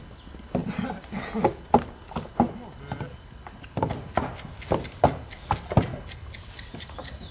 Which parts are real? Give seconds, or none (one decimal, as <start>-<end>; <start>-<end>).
0.0-7.3